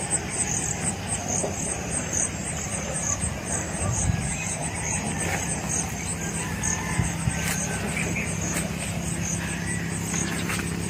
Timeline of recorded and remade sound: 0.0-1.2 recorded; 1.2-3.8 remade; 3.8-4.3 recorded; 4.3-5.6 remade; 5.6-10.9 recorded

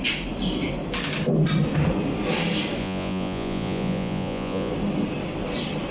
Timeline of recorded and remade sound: 0.0-2.8 recorded; 2.8-4.7 remade; 4.7-5.9 recorded

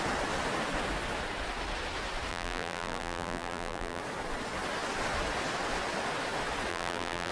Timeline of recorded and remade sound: 0.0-2.3 recorded; 2.3-4.0 remade; 4.0-6.7 recorded; 6.7-7.3 remade

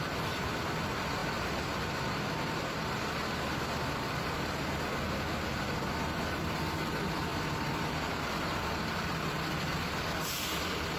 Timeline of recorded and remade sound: 0.0-11.0 recorded

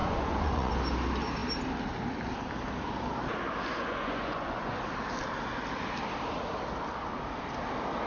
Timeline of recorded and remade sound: 0.0-0.7 remade; 0.7-3.9 recorded; 3.9-4.8 remade; 4.8-8.1 recorded

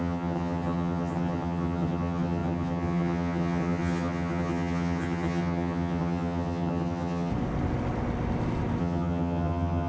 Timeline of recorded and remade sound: 0.0-7.3 remade; 7.3-8.8 recorded; 8.8-9.9 remade

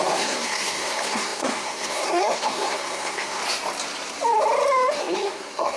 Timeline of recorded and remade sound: 0.0-3.4 remade; 3.4-5.0 recorded; 5.0-5.8 remade